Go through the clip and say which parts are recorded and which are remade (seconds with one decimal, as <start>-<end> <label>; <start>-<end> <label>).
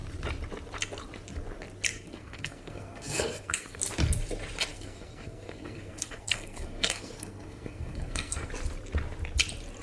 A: 0.0-1.9 recorded; 1.9-3.8 remade; 3.8-4.7 recorded; 4.7-8.5 remade; 8.5-9.8 recorded